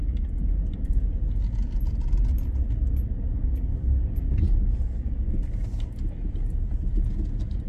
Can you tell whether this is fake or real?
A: real